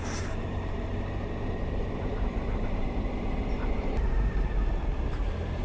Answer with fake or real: fake